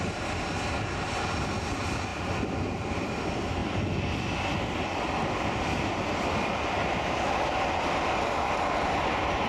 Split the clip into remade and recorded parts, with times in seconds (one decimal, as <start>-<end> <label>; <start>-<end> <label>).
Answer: 0.0-9.5 recorded

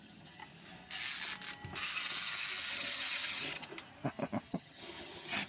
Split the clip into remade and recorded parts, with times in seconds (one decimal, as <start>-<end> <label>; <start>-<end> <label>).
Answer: 0.0-0.4 remade; 0.4-2.7 recorded; 2.7-3.7 remade; 3.7-4.5 recorded; 4.5-5.5 remade

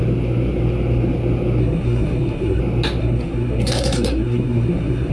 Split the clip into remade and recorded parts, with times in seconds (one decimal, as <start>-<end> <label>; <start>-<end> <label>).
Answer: 0.0-1.6 recorded; 1.6-2.6 remade; 2.6-3.0 recorded; 3.0-5.1 remade